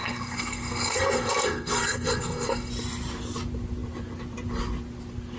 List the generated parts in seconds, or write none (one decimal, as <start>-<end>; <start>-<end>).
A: 0.0-2.7